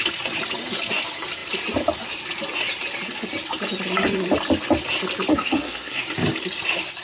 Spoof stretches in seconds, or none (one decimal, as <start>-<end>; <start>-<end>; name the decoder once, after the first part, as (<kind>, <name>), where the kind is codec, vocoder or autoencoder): 5.3-6.0 (codec, SNAC)